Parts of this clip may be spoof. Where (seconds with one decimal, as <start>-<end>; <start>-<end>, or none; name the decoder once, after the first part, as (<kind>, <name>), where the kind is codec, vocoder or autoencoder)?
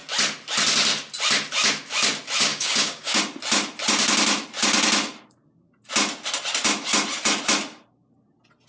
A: 2.5-3.2 (codec, DAC)